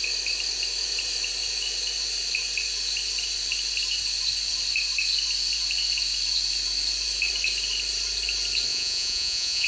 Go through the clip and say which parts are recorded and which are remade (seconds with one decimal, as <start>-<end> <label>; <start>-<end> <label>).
0.0-8.7 recorded; 8.7-9.7 remade